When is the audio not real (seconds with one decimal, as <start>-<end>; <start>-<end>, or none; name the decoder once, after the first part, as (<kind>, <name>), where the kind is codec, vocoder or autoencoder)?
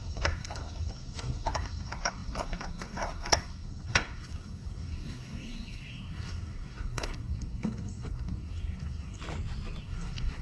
0.0-9.2 (codec, SNAC); 9.8-10.4